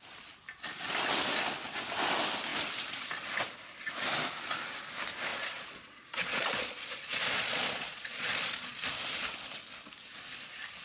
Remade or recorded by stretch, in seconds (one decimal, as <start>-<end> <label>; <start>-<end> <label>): 0.0-5.3 recorded; 5.3-8.8 remade; 8.8-10.8 recorded